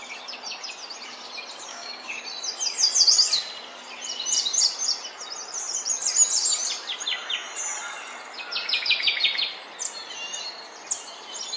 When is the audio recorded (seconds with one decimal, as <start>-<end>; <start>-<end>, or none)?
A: 0.0-1.7; 2.2-11.6